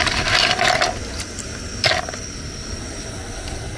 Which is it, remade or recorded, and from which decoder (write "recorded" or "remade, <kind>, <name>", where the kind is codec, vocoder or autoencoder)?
recorded